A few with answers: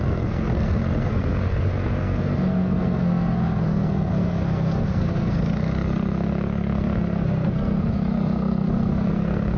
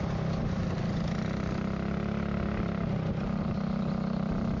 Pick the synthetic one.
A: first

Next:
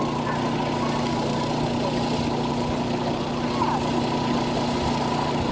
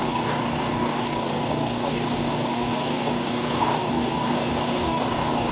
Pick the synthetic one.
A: second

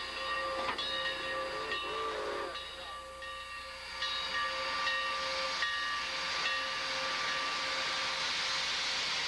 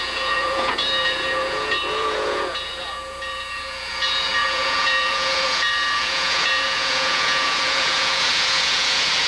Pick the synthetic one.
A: second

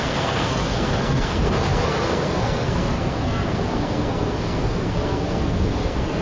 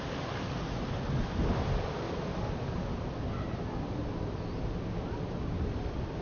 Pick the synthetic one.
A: first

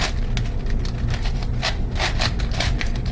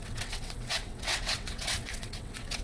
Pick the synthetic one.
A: second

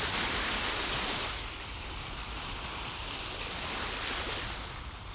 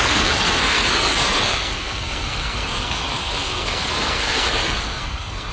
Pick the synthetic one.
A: second